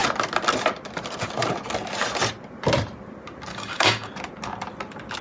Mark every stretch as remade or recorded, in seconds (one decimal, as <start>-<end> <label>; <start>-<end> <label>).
0.0-3.5 recorded; 3.5-4.1 remade; 4.1-5.2 recorded